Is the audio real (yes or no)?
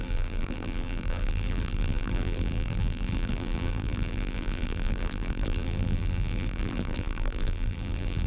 no